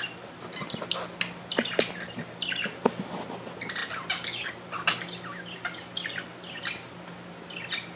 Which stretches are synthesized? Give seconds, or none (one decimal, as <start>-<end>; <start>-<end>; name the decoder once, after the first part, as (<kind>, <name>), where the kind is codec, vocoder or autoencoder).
none